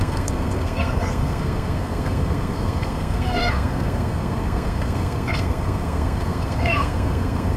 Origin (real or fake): fake